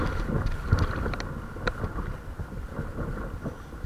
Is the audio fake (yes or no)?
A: no